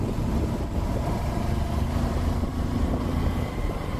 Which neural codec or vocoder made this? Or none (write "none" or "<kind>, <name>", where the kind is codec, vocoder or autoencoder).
vocoder, BigVGAN v2